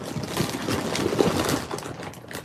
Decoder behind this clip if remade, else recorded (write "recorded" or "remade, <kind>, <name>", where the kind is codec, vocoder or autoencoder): recorded